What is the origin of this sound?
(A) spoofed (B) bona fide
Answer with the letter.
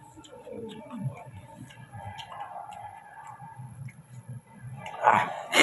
A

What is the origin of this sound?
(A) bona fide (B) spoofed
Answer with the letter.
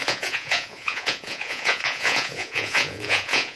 B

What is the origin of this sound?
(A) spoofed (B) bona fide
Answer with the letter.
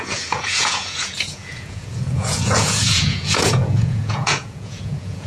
A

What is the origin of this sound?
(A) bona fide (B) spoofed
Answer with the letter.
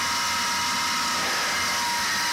A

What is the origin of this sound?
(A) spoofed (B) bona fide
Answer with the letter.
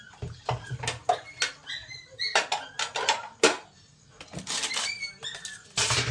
B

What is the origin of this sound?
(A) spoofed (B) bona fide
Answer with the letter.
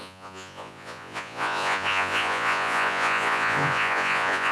A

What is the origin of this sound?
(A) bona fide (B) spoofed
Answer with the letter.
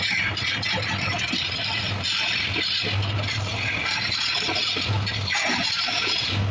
A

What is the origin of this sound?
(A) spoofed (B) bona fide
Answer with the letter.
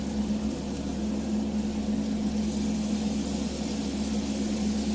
B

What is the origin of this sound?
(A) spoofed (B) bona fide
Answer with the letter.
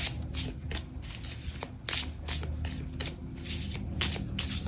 B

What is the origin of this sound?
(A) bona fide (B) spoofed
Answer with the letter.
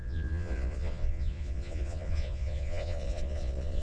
B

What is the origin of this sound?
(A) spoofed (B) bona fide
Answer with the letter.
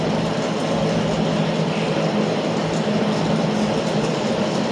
B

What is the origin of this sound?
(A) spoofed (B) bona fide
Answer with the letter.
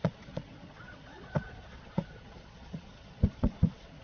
A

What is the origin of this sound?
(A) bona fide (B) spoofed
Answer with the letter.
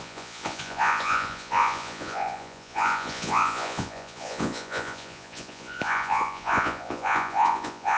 B